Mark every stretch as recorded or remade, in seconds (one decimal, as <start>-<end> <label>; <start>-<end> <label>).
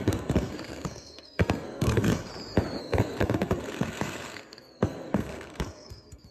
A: 0.0-2.3 remade; 2.3-2.8 recorded; 2.8-6.3 remade